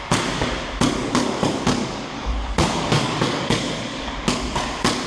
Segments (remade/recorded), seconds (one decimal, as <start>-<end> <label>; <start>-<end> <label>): 0.0-1.0 recorded; 1.0-4.1 remade; 4.1-5.1 recorded